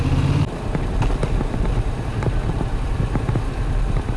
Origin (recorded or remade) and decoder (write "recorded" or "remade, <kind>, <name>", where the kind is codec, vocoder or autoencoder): recorded